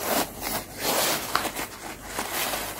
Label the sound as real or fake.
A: real